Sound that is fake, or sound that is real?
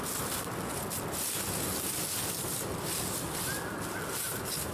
real